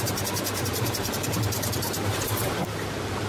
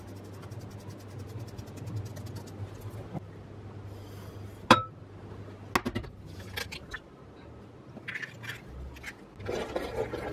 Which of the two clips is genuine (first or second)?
second